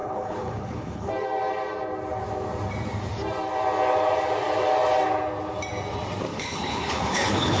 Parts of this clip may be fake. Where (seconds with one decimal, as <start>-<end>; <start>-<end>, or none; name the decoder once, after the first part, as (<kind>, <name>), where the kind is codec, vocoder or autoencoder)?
0.0-1.1 (codec, HILCodec); 6.3-7.6